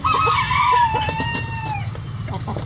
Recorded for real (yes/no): yes